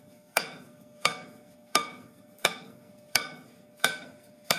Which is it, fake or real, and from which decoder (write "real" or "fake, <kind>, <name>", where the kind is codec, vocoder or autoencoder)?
fake, codec, SNAC